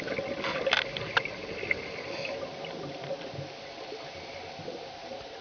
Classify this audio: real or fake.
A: real